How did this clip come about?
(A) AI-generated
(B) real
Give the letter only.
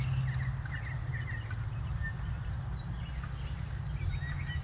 B